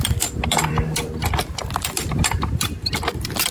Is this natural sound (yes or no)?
no